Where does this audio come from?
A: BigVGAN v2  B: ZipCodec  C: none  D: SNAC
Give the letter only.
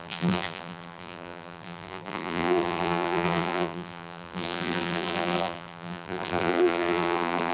A